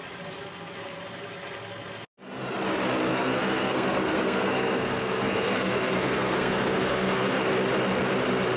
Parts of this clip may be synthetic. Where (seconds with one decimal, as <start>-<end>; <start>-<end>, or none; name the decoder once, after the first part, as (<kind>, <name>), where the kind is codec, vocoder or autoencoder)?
3.1-7.4 (codec, SNAC)